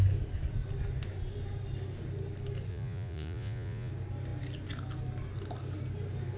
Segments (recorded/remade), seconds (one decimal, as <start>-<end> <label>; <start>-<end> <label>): 0.0-2.7 recorded; 2.7-3.9 remade; 3.9-6.4 recorded